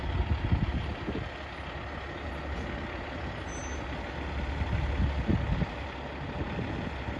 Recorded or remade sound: recorded